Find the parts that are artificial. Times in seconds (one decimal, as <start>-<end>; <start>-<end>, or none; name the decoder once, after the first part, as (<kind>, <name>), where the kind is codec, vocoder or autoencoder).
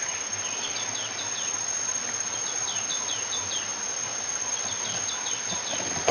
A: none